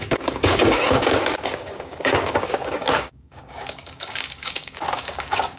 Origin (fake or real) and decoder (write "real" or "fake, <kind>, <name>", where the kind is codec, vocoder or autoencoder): fake, codec, DAC